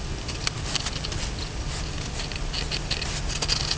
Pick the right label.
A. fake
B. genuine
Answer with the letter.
B